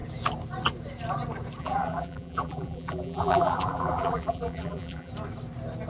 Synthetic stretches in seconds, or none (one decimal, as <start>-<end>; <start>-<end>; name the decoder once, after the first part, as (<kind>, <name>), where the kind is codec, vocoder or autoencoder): 1.6-5.1 (vocoder, BigVGAN v2)